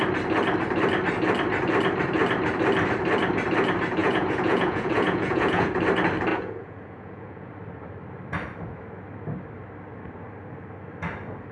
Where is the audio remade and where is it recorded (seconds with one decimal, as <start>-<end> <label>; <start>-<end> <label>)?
0.0-4.0 recorded; 4.0-5.7 remade; 5.7-6.3 recorded; 6.3-7.5 remade; 7.5-11.5 recorded